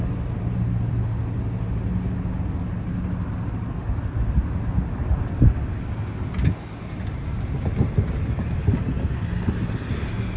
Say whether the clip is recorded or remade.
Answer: recorded